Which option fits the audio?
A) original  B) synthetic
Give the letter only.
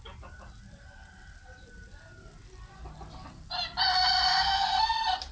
A